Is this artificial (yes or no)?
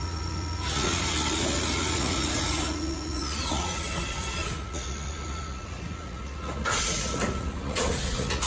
yes